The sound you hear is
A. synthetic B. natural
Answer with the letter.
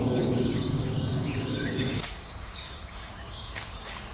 A